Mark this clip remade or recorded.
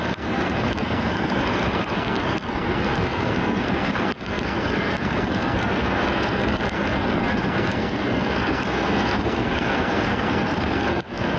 remade